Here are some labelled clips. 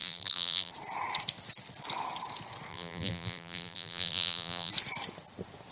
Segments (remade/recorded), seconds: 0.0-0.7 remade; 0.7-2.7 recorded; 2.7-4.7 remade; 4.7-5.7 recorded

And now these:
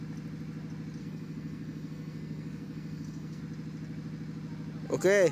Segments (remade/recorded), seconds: 0.0-1.0 recorded; 1.0-3.4 remade; 3.4-5.3 recorded

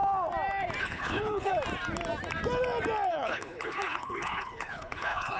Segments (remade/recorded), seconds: 0.0-0.8 recorded; 0.8-1.5 remade; 1.5-3.1 recorded; 3.1-5.4 remade

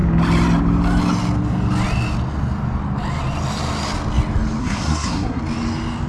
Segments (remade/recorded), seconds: 0.0-4.6 recorded; 4.6-5.4 remade; 5.4-6.1 recorded